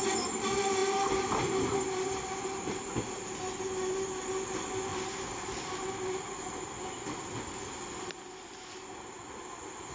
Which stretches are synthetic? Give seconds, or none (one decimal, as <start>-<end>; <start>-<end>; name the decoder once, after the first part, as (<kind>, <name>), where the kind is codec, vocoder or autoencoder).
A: none